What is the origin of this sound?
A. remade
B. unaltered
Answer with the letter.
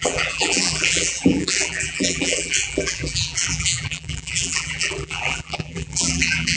A